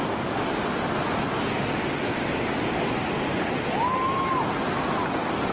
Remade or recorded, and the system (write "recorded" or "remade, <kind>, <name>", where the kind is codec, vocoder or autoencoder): recorded